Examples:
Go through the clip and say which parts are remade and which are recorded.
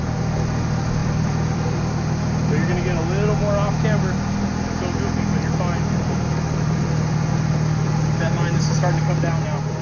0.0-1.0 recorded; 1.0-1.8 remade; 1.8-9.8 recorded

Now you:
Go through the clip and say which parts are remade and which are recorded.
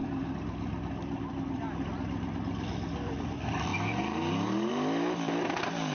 0.0-3.7 remade; 3.7-4.7 recorded; 4.7-5.9 remade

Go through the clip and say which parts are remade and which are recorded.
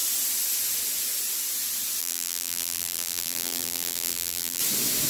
0.0-2.0 recorded; 2.0-4.6 remade; 4.6-5.1 recorded